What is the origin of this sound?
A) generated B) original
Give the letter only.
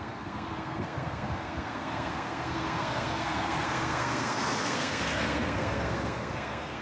A